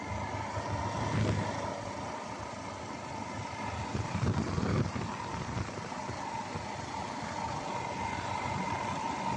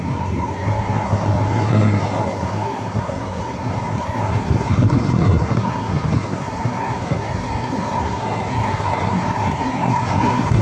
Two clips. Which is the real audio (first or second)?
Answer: first